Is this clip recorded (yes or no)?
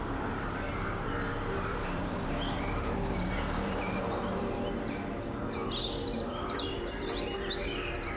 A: no